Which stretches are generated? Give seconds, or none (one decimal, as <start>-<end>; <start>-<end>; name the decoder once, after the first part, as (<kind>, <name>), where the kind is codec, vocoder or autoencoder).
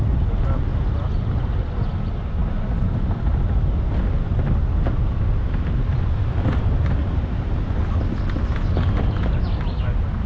0.7-1.7 (vocoder, BigVGAN v2); 2.4-3.4; 4.6-6.0; 7.0-7.7